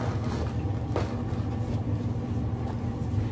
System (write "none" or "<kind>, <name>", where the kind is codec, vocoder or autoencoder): none